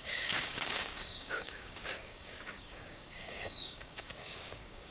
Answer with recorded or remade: remade